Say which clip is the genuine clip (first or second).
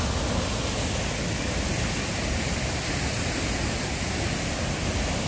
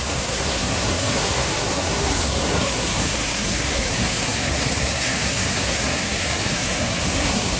first